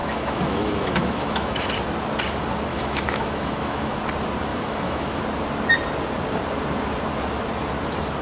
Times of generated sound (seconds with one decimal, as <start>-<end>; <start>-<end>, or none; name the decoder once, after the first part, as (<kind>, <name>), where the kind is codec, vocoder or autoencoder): 0.0-1.7 (autoencoder, DAC-VAE); 2.7-4.0; 4.5-5.2